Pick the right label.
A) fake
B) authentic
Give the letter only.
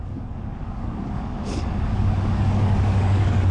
A